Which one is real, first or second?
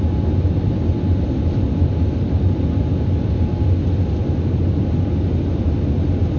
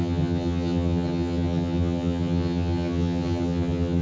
first